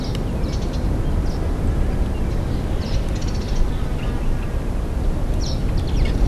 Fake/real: real